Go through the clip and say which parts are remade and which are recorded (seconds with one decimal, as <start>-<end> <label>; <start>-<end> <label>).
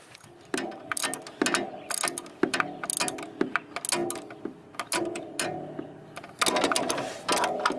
0.0-7.8 recorded